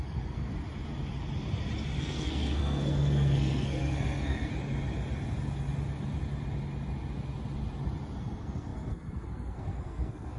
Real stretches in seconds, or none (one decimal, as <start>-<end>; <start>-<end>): 0.5-2.0; 4.5-8.2